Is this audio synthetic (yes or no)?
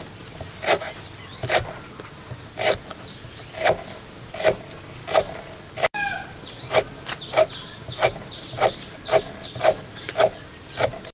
no